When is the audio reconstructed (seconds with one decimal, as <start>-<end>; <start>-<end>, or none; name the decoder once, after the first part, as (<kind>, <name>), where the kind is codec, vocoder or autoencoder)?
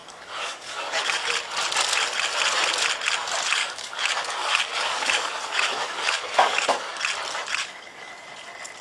0.0-1.3 (codec, DAC); 3.6-7.0; 7.6-8.1